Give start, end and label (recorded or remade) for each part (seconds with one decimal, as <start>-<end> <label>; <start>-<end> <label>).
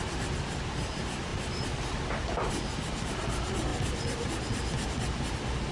0.0-5.7 recorded